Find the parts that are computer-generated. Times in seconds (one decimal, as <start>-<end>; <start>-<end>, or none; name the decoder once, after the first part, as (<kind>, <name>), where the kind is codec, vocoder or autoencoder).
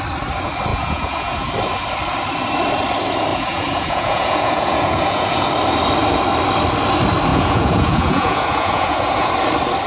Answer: 0.7-1.5 (vocoder, Vocos); 3.3-5.5; 7.3-9.3